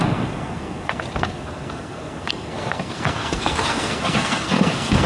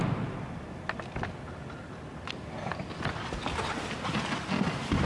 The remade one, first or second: first